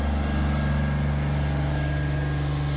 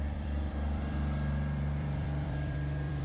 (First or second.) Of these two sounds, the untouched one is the first